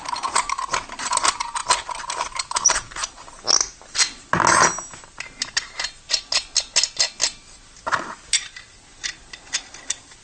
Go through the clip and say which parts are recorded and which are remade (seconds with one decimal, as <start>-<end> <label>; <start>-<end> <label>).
0.0-10.2 recorded